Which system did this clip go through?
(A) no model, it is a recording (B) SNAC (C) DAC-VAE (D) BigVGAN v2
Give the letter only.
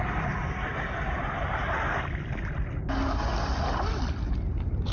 A